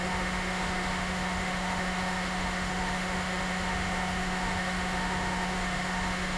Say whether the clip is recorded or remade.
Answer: remade